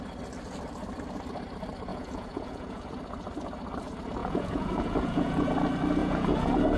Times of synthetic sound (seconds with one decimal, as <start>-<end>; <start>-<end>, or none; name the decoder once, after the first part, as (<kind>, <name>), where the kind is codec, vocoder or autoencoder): 1.9-2.9 (vocoder, Vocos); 4.2-5.5; 6.0-6.8